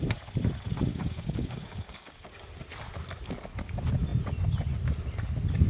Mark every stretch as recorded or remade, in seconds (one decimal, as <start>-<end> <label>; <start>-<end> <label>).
0.0-0.9 recorded; 0.9-2.3 remade; 2.3-5.7 recorded